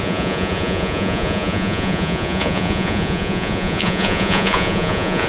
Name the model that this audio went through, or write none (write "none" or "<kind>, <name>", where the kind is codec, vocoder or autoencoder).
vocoder, Vocos